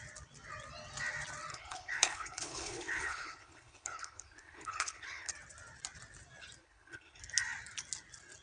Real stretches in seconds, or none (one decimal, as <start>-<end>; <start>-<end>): 0.0-1.5; 5.3-6.6; 7.2-8.4